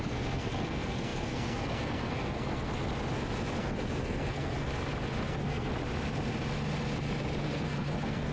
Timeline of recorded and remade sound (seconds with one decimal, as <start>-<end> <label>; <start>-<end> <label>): 0.0-2.7 remade; 2.7-3.6 recorded; 3.6-4.7 remade; 4.7-5.3 recorded; 5.3-5.7 remade; 5.7-7.4 recorded; 7.4-8.3 remade

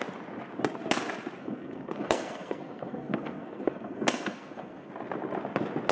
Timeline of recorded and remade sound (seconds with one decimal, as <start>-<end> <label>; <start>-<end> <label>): 0.0-1.4 recorded; 1.4-4.9 remade; 4.9-5.9 recorded

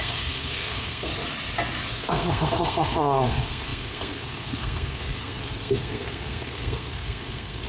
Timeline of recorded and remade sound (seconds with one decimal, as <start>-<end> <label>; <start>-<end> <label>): 0.0-1.1 remade; 1.1-1.9 recorded; 1.9-7.7 remade

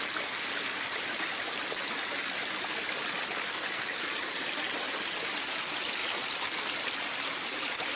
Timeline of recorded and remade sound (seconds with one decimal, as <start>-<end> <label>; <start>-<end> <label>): 0.0-3.5 recorded; 3.5-4.0 remade; 4.0-8.0 recorded

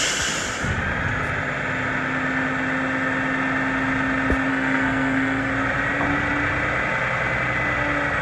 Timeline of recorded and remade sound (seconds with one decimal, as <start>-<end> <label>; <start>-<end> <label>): 0.0-4.5 recorded; 4.5-5.5 remade; 5.5-8.2 recorded